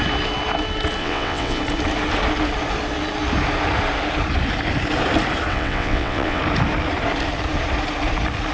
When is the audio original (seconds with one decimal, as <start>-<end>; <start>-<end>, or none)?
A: 0.0-1.0; 1.6-5.5; 6.4-8.5